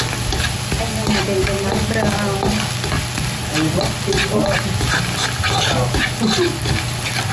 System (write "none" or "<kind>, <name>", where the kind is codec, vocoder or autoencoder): none